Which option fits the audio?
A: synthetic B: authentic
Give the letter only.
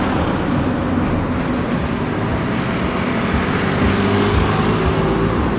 B